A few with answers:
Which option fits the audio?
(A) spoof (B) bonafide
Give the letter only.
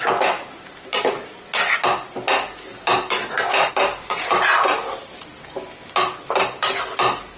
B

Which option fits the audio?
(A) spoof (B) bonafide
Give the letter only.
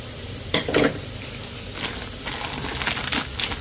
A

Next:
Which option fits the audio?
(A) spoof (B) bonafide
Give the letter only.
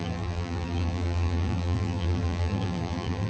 A